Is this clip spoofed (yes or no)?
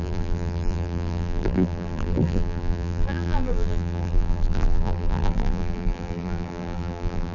yes